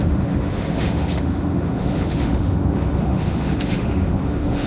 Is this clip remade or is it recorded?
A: remade